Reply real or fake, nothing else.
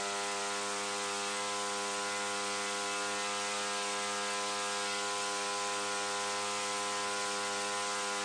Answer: real